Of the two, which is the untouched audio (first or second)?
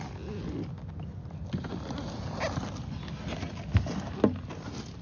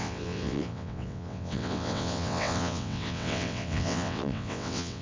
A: first